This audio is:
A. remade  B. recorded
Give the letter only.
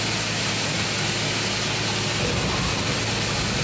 B